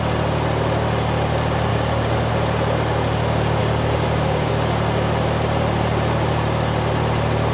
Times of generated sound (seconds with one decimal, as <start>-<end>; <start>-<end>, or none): 1.7-2.3; 3.6-4.5